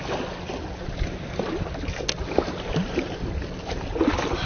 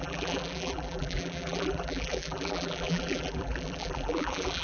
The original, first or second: first